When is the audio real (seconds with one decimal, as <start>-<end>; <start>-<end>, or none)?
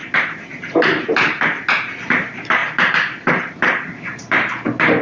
0.0-2.0